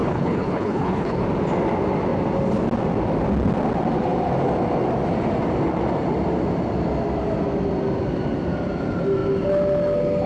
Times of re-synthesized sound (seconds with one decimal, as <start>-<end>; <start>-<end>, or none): 0.0-1.2